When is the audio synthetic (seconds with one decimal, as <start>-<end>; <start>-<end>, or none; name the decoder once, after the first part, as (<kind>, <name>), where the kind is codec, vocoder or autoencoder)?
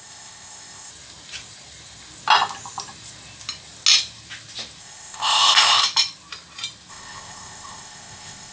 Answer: 0.0-0.9 (codec, ZipCodec); 4.8-5.8; 6.9-8.5